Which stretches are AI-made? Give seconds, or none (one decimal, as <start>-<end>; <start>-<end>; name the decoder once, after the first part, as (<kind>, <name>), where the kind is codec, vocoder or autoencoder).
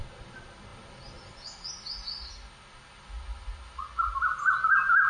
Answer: none